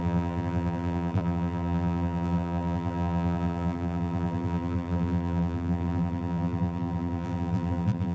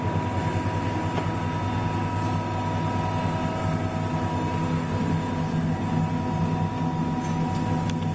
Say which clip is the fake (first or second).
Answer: first